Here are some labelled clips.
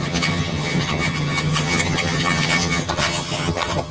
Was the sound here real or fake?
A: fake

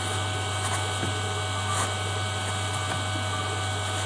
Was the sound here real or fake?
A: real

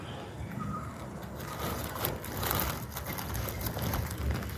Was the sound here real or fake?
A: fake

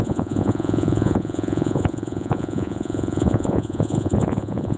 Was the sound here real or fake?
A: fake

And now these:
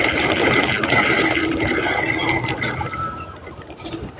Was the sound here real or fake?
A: fake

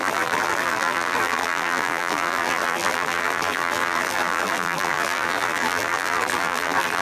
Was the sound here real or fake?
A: fake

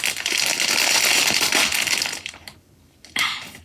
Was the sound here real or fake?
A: real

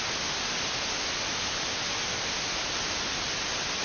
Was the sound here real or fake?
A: real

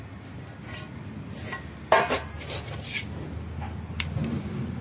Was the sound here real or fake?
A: real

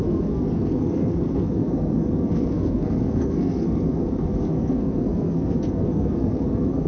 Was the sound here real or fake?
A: fake